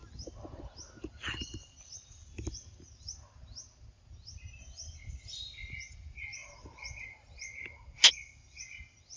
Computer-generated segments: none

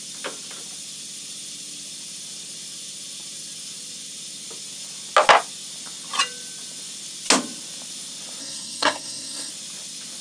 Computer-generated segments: 8.4-9.5 (codec, SNAC)

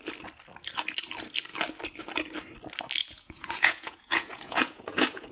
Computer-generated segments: 3.0-5.3 (vocoder, Vocos)